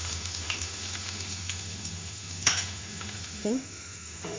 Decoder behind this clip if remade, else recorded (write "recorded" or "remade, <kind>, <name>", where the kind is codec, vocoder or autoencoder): remade, autoencoder, DAC-VAE